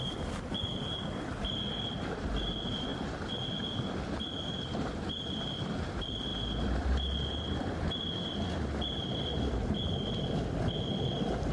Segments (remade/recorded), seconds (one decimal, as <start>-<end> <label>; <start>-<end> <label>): 0.0-2.9 remade; 2.9-4.5 recorded; 4.5-11.5 remade